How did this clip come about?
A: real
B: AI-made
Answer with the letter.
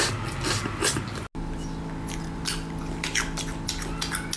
A